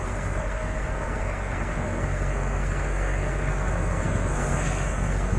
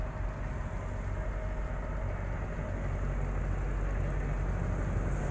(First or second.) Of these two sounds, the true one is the second